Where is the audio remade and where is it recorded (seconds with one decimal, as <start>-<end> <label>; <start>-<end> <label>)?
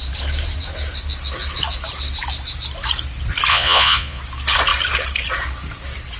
0.0-3.5 recorded; 3.5-4.2 remade; 4.2-6.2 recorded